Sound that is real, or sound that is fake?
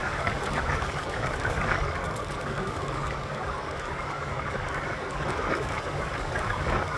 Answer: fake